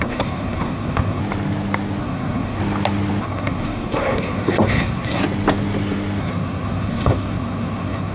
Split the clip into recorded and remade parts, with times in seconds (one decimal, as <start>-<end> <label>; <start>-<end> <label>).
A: 0.0-1.2 remade; 1.2-2.0 recorded; 2.0-2.6 remade; 2.6-3.2 recorded; 3.2-5.2 remade; 5.2-6.2 recorded; 6.2-8.1 remade